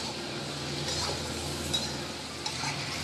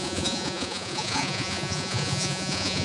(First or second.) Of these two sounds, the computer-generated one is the second